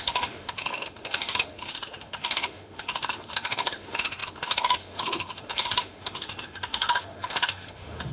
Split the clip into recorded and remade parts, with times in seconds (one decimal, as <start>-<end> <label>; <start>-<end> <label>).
0.0-8.1 remade